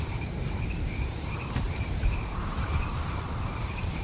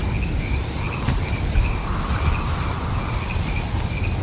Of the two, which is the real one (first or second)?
second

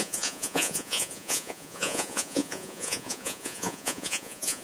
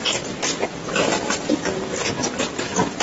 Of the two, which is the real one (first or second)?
second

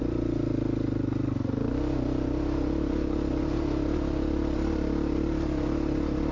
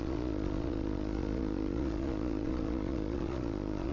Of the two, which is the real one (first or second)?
first